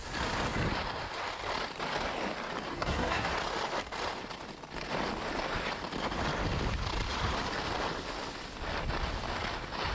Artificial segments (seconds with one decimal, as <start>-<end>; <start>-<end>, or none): 2.7-3.3